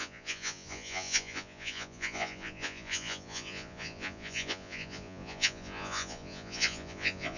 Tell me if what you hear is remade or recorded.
remade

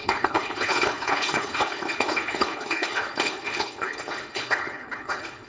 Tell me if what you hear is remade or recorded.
remade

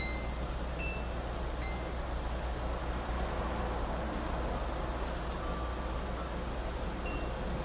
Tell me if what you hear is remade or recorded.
recorded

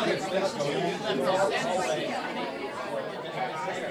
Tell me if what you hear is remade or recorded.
remade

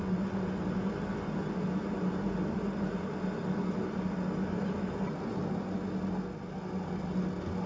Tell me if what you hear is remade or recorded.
recorded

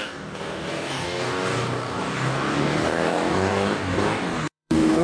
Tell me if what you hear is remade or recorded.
remade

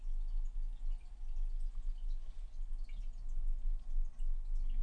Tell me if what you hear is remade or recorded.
recorded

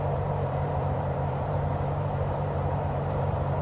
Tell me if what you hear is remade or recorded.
remade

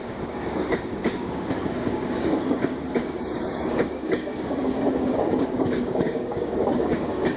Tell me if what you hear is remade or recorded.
remade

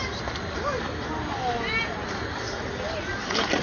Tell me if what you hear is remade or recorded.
recorded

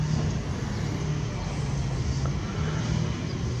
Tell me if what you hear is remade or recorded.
recorded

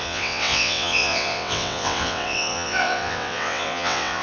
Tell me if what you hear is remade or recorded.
remade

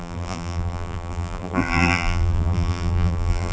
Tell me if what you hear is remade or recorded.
remade